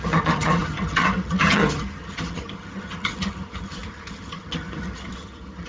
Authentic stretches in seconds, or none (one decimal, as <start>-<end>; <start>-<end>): none